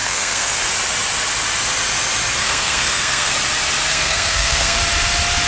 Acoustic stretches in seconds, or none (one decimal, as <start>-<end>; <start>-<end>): 0.7-2.4; 3.3-3.9; 4.8-5.5